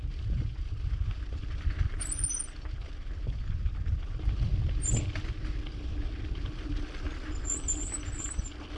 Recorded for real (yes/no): yes